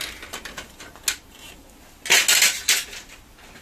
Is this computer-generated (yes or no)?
no